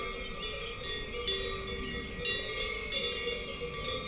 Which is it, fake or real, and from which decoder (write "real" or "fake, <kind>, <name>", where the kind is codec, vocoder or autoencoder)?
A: real